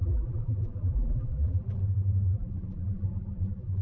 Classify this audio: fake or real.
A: fake